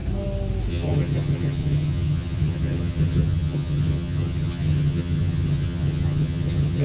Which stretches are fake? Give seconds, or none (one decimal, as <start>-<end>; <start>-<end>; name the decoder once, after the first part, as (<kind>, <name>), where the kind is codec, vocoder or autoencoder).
0.7-6.8 (vocoder, HiFi-GAN)